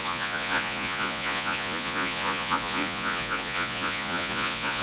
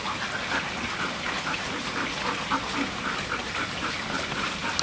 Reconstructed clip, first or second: first